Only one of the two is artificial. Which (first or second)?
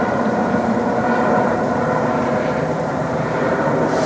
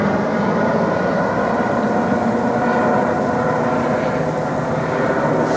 first